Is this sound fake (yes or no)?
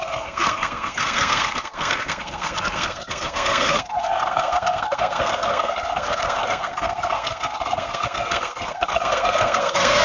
yes